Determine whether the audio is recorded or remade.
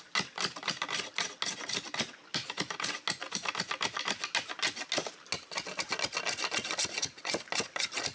recorded